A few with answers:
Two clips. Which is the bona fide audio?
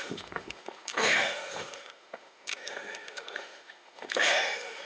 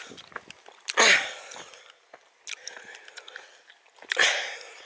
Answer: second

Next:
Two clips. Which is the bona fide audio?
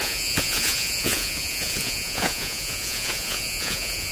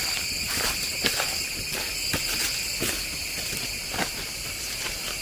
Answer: second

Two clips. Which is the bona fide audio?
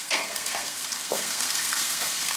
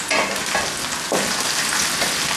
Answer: second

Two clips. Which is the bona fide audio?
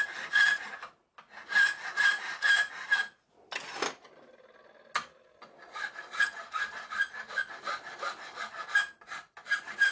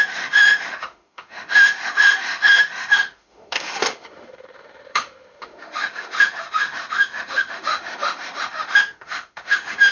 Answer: first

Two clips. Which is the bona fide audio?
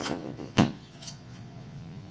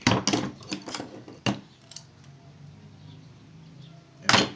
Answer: second